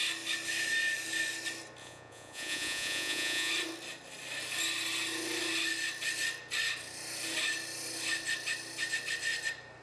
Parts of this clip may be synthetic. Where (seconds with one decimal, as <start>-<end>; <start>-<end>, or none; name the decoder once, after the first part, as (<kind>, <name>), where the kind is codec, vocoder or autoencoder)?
1.8-3.5 (vocoder, Vocos)